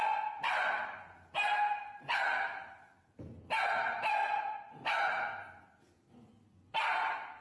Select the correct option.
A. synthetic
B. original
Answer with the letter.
B